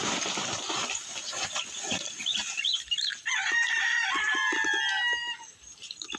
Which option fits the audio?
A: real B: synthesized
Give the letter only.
A